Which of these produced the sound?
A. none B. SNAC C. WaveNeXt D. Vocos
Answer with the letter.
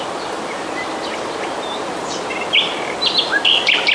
A